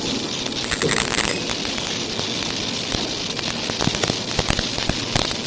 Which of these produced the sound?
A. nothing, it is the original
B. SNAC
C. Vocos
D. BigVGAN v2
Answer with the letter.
A